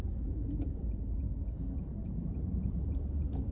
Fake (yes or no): no